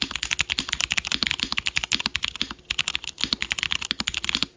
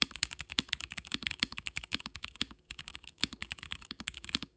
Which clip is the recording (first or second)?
first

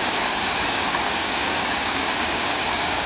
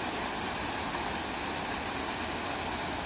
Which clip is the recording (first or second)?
second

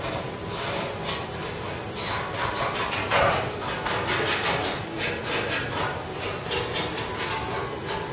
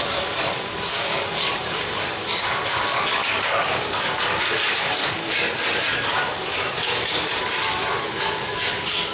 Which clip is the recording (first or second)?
first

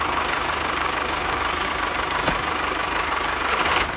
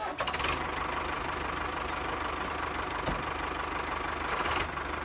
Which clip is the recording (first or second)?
second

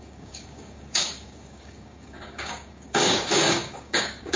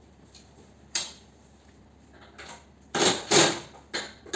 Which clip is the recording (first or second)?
second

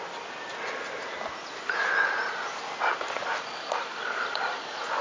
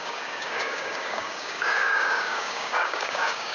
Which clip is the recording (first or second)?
first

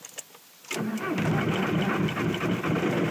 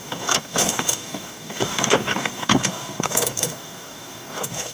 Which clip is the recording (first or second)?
first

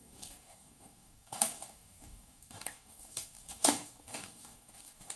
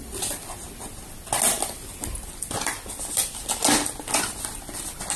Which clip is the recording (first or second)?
second